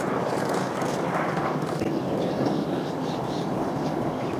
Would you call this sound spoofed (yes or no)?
yes